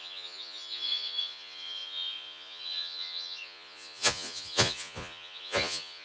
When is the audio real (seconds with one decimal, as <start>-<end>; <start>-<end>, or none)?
none